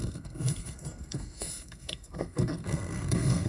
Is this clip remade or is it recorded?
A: remade